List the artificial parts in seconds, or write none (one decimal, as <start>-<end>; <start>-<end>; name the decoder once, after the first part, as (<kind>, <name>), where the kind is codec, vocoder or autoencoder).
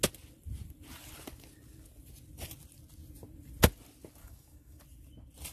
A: 4.2-4.8 (codec, DAC)